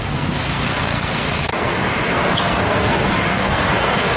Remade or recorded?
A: remade